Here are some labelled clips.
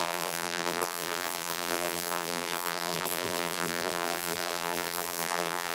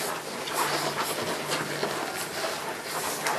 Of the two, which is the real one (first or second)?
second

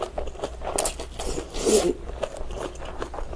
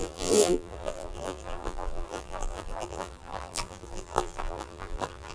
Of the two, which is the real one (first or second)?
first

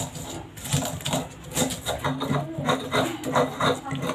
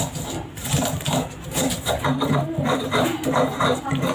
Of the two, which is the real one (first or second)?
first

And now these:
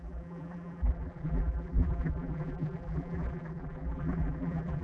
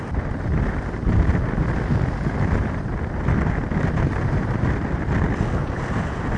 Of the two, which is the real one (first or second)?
second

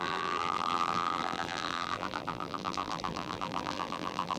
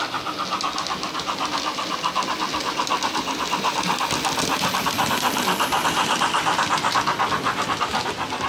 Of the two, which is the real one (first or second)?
second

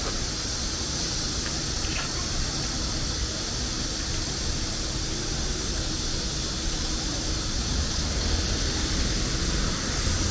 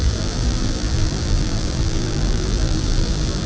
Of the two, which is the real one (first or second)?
first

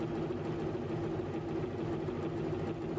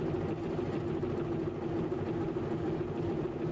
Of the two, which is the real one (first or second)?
first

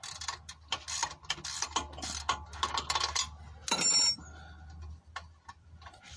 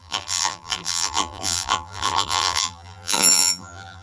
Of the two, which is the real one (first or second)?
first